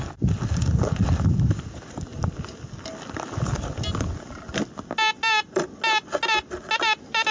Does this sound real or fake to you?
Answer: real